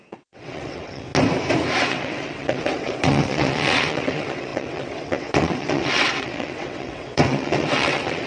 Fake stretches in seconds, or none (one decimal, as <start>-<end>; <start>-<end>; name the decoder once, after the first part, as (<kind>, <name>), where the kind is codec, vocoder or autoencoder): 0.0-1.1 (vocoder, WaveNeXt); 1.8-8.3